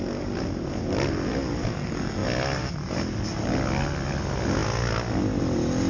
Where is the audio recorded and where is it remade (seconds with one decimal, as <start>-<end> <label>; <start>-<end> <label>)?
0.0-5.9 recorded